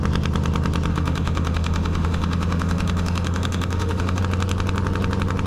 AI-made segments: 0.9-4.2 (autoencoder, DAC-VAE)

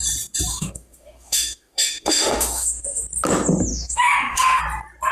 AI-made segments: 0.5-3.0 (autoencoder, DAC-VAE); 3.7-4.6

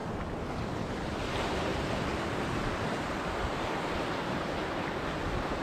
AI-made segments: none

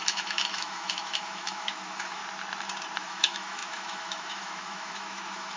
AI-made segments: 0.0-2.2 (autoencoder, DAC-VAE); 3.0-5.6

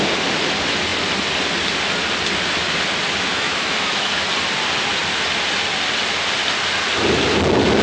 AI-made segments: 3.3-4.1 (autoencoder, DAC-VAE)

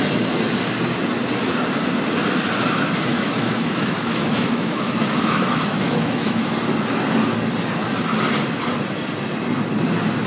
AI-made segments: 3.1-6.4 (autoencoder, DAC-VAE)

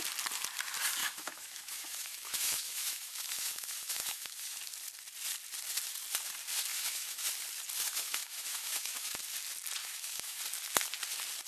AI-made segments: 1.0-4.6 (autoencoder, DAC-VAE); 6.7-7.3; 7.9-9.2; 9.8-10.4